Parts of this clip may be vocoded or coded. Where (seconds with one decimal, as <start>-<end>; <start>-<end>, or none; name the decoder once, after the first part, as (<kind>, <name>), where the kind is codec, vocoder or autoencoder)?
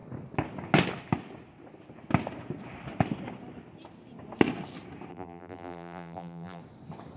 5.1-6.6 (vocoder, BigVGAN v2)